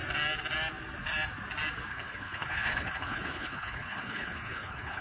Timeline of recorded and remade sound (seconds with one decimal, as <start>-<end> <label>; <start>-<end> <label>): 0.0-1.9 recorded; 1.9-5.0 remade

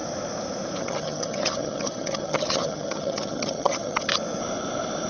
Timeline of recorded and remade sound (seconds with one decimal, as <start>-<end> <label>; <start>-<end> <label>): 0.0-0.8 recorded; 0.8-4.1 remade; 4.1-5.1 recorded

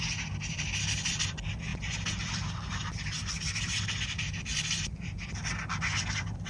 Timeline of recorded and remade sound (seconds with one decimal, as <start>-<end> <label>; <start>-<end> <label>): 0.0-6.5 recorded

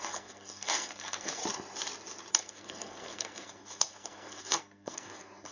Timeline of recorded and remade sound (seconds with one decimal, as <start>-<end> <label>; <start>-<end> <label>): 0.0-1.4 remade; 1.4-2.3 recorded; 2.3-5.5 remade

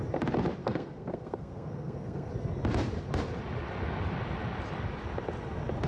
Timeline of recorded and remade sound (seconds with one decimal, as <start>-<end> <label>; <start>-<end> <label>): 0.0-0.6 recorded; 0.6-2.3 remade; 2.3-5.9 recorded

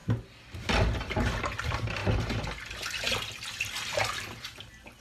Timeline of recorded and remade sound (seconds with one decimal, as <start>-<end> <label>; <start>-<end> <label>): 0.0-5.0 recorded